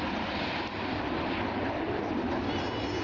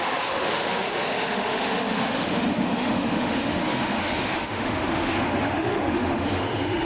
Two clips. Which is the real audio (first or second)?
first